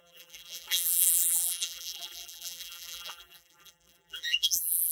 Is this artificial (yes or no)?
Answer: yes